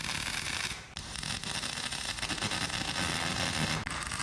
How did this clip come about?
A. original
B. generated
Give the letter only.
A